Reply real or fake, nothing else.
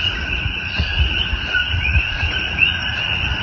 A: fake